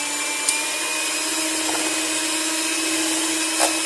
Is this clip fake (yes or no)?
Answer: no